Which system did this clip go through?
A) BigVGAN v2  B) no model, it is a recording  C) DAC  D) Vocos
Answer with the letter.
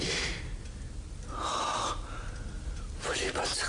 B